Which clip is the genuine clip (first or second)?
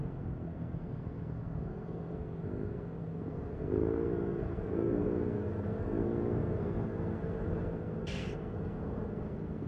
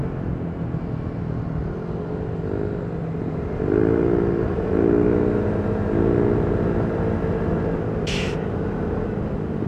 second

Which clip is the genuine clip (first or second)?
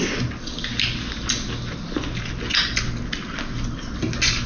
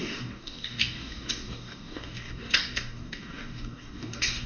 first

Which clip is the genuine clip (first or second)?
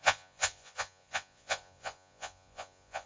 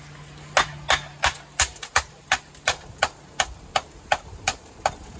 second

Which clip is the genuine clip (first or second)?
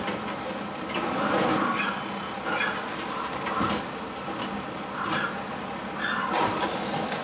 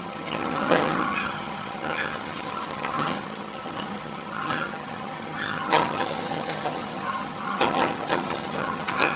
first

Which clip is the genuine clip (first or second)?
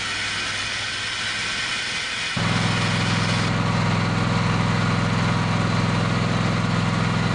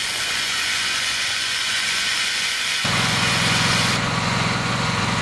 first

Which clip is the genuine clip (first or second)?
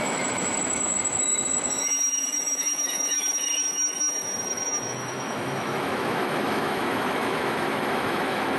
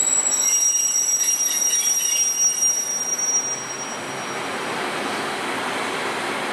second